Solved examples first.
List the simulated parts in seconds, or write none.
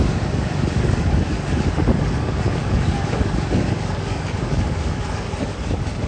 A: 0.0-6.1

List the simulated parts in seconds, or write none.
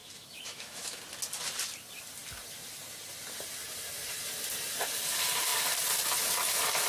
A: 0.0-1.0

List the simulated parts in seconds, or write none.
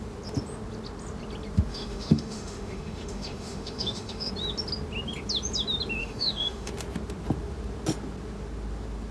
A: 1.7-4.3; 6.0-6.7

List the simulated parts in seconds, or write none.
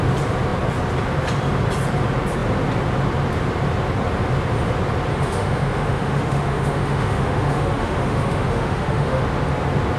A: 5.1-9.2